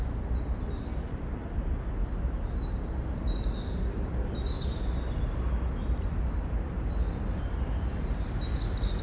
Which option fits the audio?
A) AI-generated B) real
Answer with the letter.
B